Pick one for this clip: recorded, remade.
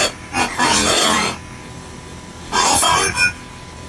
recorded